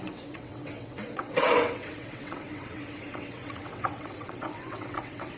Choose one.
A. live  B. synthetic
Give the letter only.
B